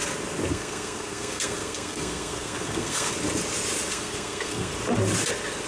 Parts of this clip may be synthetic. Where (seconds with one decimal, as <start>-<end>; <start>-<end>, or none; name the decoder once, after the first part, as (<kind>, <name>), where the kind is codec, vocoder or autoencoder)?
0.5-3.1 (codec, SNAC); 3.9-4.7